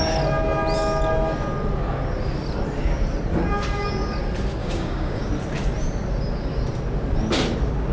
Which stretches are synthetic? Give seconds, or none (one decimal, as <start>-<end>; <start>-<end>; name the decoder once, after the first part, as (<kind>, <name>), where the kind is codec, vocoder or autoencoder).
4.6-5.3 (codec, DAC)